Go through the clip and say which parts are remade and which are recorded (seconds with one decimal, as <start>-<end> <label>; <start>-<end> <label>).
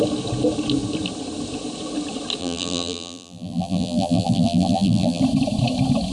0.0-2.4 recorded; 2.4-5.2 remade; 5.2-6.1 recorded